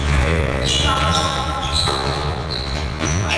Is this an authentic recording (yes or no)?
no